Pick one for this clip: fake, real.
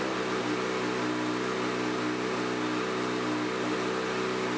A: real